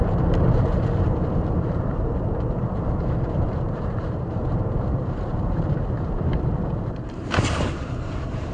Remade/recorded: remade